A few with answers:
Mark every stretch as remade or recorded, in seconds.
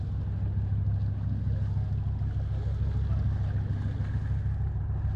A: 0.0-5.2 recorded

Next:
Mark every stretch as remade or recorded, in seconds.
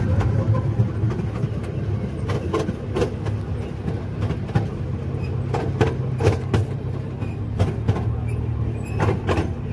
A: 0.0-6.6 recorded; 6.6-7.3 remade; 7.3-9.7 recorded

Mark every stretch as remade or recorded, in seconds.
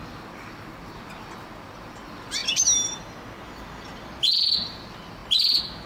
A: 0.0-5.9 recorded